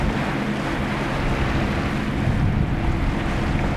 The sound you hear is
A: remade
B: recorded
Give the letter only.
B